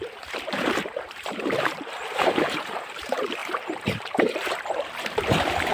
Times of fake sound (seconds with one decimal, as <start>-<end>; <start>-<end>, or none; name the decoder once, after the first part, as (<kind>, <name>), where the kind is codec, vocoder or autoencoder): 0.0-5.7 (vocoder, BigVGAN v2)